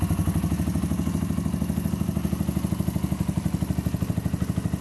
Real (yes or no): yes